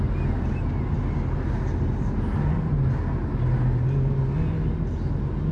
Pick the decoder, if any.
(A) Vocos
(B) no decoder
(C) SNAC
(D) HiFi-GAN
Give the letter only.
B